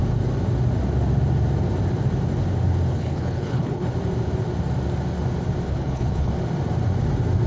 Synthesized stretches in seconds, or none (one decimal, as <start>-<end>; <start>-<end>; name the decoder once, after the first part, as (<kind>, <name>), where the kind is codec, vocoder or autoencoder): 2.9-3.9 (codec, HILCodec); 5.7-6.3